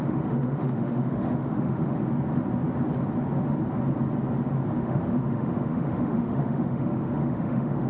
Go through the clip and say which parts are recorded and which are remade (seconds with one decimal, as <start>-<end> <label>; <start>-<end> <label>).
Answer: 0.0-2.0 remade; 2.0-4.8 recorded; 4.8-7.9 remade